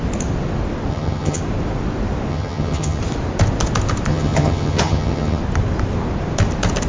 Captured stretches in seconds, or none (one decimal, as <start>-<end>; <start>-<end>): 0.0-0.9; 1.4-2.3; 3.0-4.1; 5.4-6.9